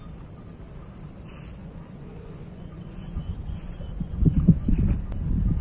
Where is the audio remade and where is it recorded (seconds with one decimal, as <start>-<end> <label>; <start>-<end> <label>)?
0.0-1.6 recorded; 1.6-4.7 remade; 4.7-5.6 recorded